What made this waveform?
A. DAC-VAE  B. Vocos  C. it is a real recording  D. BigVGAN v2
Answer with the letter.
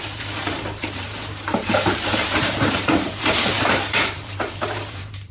D